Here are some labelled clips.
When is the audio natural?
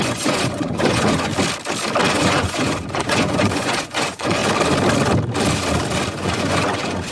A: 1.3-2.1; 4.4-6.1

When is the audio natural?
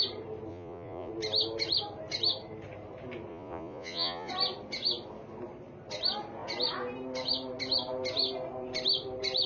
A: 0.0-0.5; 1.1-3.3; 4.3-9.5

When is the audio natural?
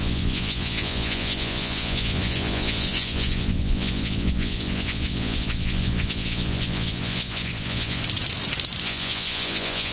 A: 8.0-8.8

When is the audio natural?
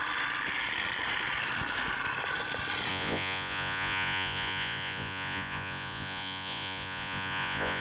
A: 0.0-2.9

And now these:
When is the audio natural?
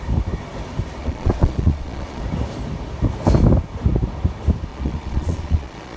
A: 0.0-1.0; 2.2-4.7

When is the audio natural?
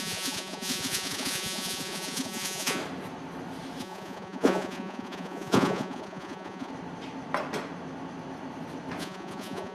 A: 2.8-3.8; 6.7-9.0